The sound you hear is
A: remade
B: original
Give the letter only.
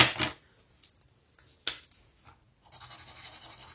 B